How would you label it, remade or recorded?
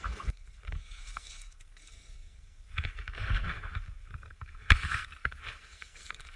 remade